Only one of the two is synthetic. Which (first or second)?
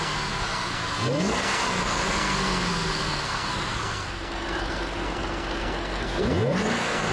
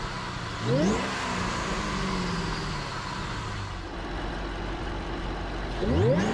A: first